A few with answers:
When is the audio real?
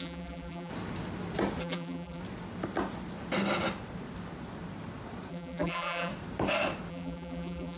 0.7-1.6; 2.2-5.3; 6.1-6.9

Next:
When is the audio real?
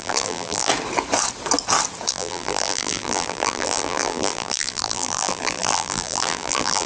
0.7-2.1